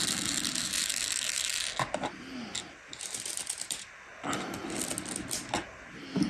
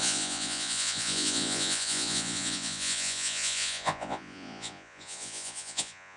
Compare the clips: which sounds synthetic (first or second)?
second